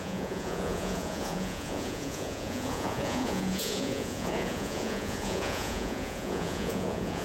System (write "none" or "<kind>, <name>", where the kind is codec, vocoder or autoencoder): vocoder, Vocos